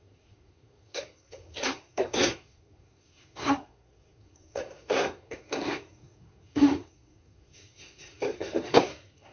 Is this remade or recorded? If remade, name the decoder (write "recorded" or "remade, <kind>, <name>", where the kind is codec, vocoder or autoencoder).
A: remade, codec, SNAC